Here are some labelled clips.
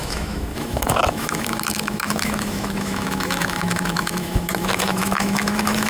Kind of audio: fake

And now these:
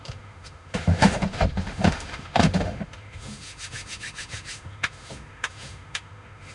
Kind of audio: fake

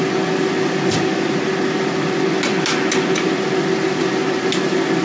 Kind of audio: real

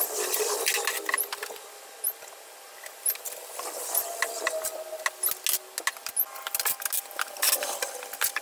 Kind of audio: real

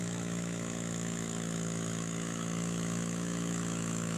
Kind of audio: fake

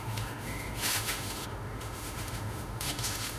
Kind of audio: fake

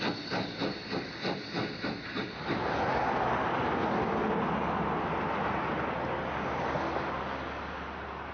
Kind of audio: real